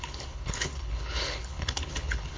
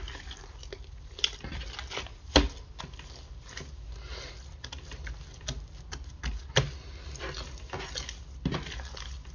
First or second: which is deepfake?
first